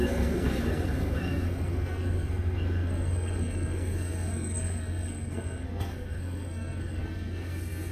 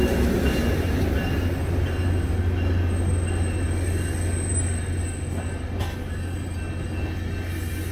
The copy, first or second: first